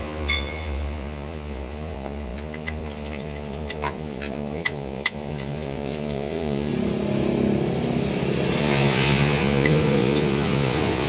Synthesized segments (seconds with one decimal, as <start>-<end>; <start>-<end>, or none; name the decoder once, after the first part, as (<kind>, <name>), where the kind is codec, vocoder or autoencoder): 0.0-6.7 (vocoder, Vocos); 8.6-11.1